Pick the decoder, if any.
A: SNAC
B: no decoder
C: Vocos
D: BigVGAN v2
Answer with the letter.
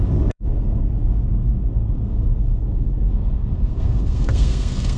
A